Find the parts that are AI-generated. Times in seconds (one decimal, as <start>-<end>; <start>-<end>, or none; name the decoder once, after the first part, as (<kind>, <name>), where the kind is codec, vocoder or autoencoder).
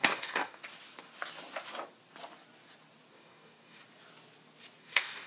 0.0-0.6 (codec, DAC); 3.1-3.8; 4.8-5.3